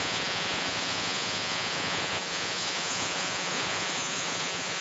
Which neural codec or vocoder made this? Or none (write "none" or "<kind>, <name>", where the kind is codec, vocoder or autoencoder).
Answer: vocoder, Vocos